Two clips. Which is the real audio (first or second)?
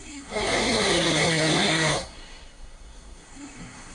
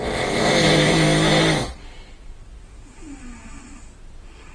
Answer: second